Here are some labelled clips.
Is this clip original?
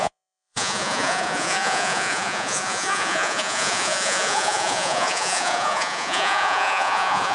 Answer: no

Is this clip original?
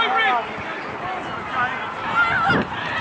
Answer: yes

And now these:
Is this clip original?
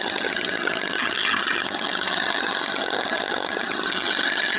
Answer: no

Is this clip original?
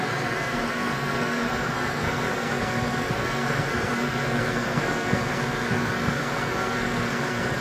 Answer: no